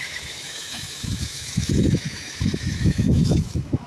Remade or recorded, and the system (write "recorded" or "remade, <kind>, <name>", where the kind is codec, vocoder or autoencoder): remade, autoencoder, DAC-VAE